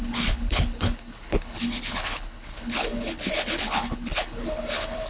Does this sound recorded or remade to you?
remade